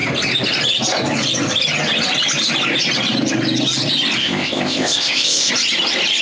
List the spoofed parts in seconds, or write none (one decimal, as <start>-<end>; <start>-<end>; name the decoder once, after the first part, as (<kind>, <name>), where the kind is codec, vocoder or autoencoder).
4.2-5.5 (codec, ZipCodec)